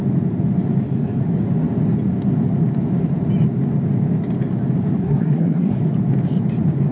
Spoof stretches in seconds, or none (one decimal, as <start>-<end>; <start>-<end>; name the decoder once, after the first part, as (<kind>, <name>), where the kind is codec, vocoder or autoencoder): 5.0-5.9 (codec, SNAC)